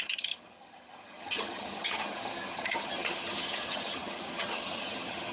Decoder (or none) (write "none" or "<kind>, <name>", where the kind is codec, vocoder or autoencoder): vocoder, HiFi-GAN